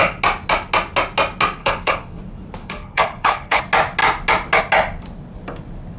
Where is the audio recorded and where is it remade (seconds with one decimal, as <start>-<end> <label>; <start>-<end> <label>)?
0.0-1.6 recorded; 1.6-2.2 remade; 2.2-2.6 recorded; 2.6-3.6 remade; 3.6-6.0 recorded